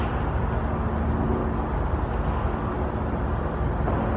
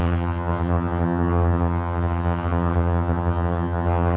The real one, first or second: first